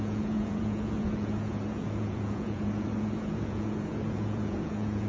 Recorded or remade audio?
remade